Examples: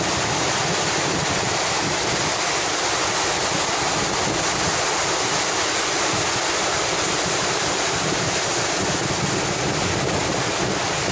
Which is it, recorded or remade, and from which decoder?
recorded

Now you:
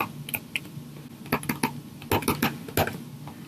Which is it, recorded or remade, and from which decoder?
recorded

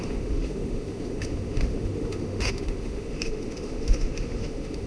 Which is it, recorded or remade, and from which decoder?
remade, autoencoder, DAC-VAE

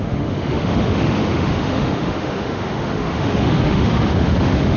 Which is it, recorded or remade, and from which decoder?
remade, autoencoder, DAC-VAE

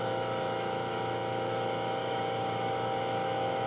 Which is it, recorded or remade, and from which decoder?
remade, autoencoder, DAC-VAE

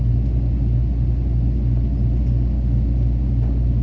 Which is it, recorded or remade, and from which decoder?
recorded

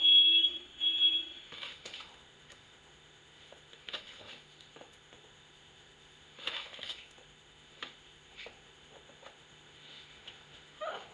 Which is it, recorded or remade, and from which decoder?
remade, autoencoder, DAC-VAE